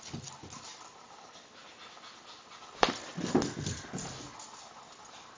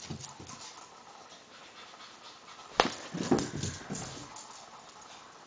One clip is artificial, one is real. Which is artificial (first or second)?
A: first